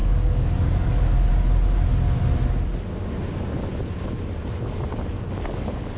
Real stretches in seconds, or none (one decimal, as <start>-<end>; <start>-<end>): 1.3-4.9